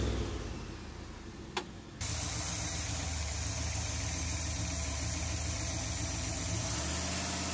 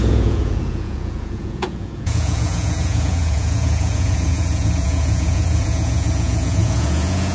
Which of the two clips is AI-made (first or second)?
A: second